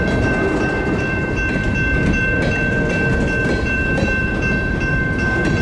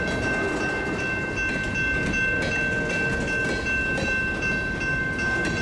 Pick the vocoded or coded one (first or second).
first